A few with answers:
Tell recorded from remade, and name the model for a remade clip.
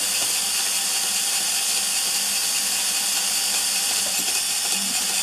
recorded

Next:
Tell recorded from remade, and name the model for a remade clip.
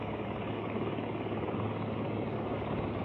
remade, codec, DAC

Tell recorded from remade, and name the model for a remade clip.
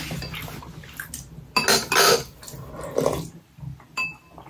recorded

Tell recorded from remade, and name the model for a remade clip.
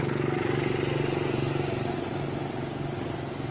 recorded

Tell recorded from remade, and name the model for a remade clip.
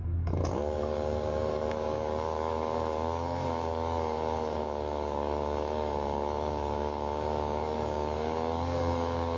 remade, codec, DAC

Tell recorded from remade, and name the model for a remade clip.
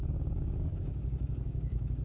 remade, codec, DAC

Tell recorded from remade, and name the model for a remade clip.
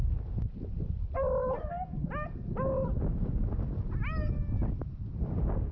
recorded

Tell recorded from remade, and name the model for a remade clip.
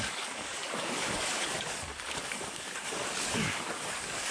remade, codec, DAC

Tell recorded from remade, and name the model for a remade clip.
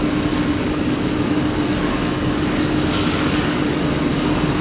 remade, codec, DAC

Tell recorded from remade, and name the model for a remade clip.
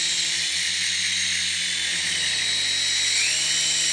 recorded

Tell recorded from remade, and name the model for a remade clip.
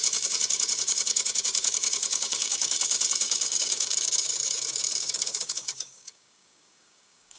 remade, codec, DAC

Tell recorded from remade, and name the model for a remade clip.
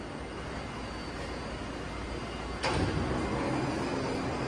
recorded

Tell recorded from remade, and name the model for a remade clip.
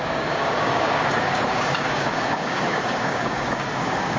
remade, codec, DAC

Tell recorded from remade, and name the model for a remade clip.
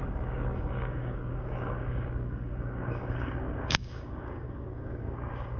remade, codec, DAC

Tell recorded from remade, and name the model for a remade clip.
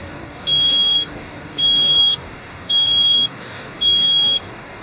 remade, codec, DAC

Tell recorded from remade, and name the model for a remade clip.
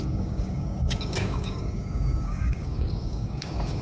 remade, codec, DAC